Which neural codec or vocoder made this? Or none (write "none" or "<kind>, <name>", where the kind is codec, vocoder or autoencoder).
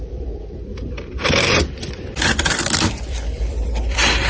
vocoder, BigVGAN v2